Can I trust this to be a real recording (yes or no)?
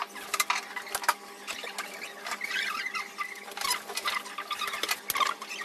yes